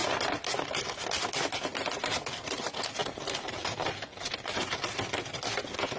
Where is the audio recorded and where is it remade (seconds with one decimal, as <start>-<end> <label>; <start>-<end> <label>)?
0.0-3.0 recorded; 3.0-4.5 remade; 4.5-6.0 recorded